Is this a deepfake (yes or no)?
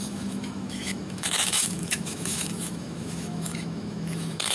yes